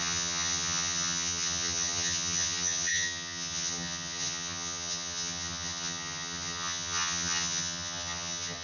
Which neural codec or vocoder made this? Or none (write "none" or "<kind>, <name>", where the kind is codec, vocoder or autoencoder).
vocoder, HiFi-GAN